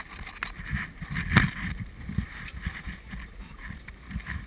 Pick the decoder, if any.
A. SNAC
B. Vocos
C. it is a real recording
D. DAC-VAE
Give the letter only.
C